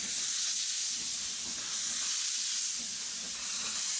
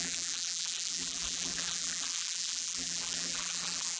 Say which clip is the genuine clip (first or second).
first